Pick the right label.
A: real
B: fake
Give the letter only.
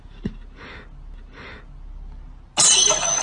A